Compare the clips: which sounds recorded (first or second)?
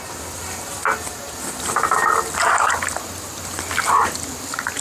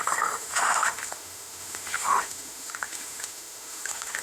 first